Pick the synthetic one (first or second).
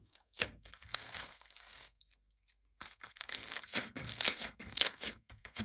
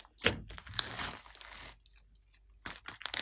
first